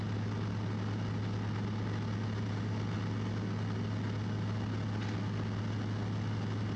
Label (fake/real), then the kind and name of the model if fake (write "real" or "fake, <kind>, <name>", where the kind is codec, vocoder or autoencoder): real